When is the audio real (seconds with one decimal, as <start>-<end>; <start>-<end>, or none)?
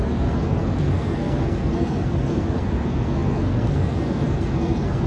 none